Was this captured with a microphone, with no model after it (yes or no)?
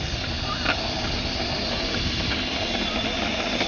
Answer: yes